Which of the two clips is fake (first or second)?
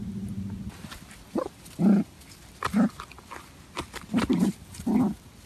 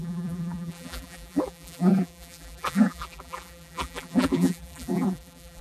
second